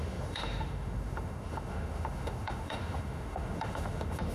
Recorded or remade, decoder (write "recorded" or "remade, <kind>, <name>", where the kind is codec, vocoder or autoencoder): remade, autoencoder, DAC-VAE